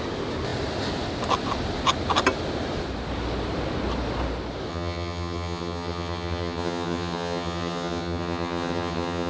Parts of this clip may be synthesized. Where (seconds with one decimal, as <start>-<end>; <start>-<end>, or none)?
4.7-9.3